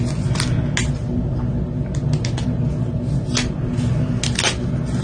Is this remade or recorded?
recorded